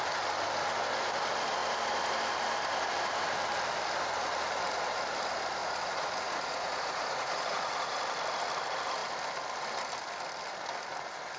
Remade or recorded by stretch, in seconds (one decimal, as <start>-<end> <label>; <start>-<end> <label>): 0.0-5.6 recorded; 5.6-8.0 remade; 8.0-11.4 recorded